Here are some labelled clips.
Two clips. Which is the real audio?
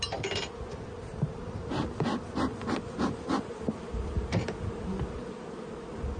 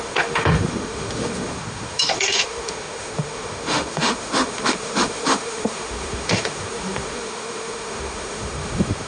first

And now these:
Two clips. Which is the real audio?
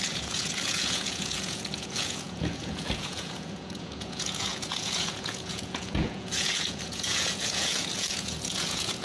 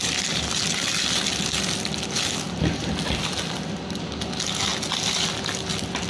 second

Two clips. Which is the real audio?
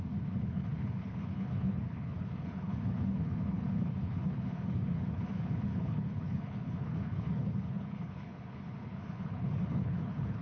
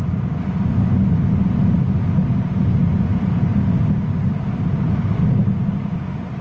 second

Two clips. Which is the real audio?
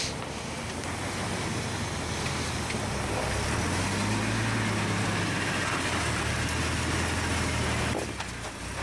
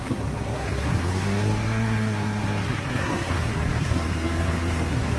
first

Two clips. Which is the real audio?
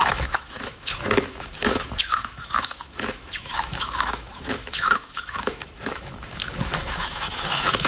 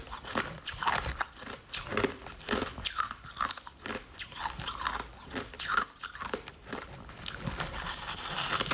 second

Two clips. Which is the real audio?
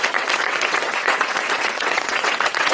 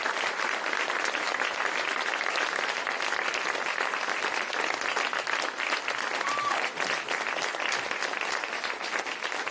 second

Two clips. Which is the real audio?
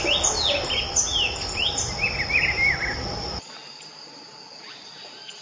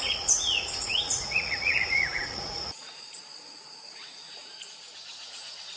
first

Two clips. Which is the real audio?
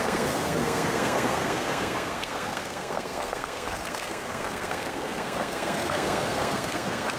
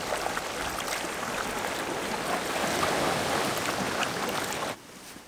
second